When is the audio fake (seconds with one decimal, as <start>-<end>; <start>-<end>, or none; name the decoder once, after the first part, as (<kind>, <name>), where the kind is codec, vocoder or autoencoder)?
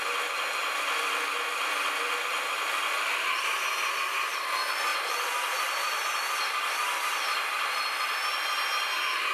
4.9-6.0 (vocoder, BigVGAN v2); 6.8-7.9